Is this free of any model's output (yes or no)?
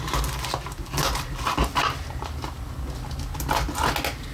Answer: yes